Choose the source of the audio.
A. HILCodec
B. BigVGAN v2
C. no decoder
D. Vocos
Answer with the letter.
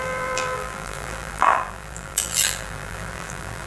B